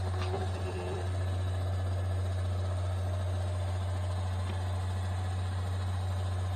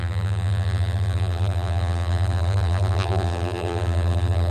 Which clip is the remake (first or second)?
second